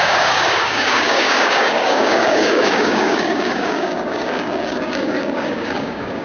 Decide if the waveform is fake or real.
fake